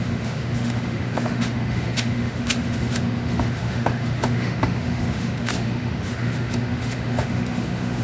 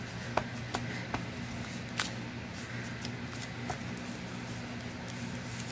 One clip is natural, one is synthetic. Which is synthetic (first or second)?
first